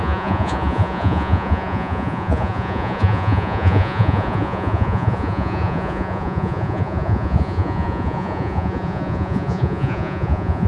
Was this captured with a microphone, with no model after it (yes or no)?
no